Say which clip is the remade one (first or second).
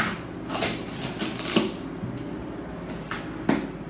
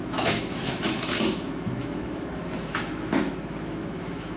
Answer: second